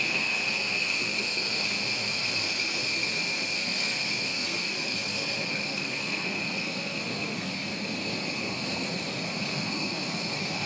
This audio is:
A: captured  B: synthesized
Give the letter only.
B